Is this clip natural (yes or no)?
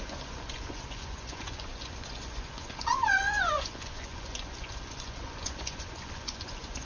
no